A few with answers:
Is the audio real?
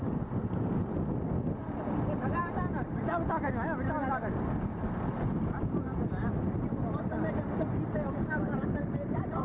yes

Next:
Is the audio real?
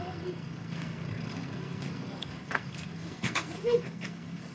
no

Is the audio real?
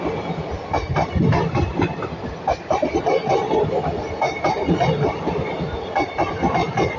yes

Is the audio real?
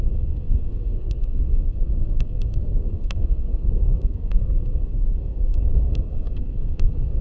no